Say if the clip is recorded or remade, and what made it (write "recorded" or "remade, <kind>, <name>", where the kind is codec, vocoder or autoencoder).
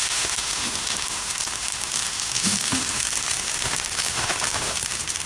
remade, autoencoder, DAC-VAE